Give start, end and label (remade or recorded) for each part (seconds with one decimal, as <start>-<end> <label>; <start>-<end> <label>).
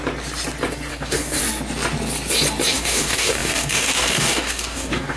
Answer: 0.0-0.9 recorded; 0.9-1.4 remade; 1.4-2.7 recorded; 2.7-5.2 remade